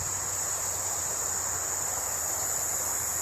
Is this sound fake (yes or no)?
no